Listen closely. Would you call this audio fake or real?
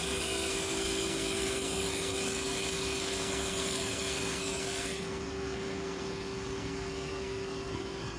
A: fake